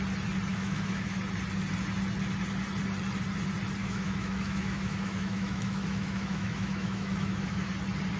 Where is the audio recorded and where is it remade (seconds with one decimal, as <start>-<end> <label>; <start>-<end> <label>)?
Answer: 0.0-0.5 recorded; 0.5-1.2 remade; 1.2-3.8 recorded; 3.8-7.7 remade; 7.7-8.2 recorded